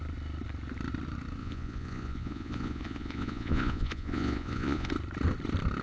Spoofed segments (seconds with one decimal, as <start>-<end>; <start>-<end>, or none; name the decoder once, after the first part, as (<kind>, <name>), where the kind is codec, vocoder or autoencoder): 1.4-4.9 (vocoder, Vocos)